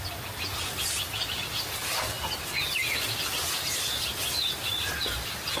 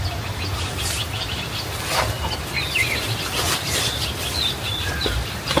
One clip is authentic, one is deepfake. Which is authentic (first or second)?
first